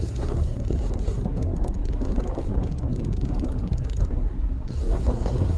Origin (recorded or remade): remade